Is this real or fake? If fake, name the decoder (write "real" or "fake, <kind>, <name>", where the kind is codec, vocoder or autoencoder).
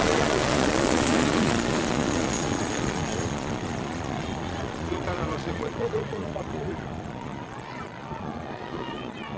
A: fake, vocoder, Vocos